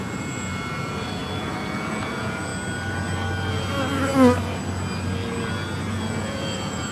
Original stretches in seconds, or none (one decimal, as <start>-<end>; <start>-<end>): 2.5-5.9